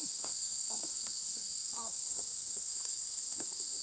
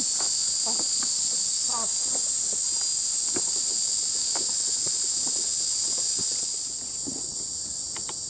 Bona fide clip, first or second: second